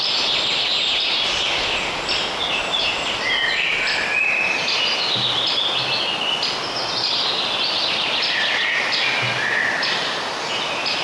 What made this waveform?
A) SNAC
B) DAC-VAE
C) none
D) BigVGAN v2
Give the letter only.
C